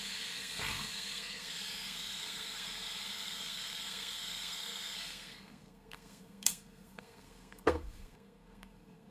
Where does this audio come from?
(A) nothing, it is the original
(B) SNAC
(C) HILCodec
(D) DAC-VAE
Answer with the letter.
B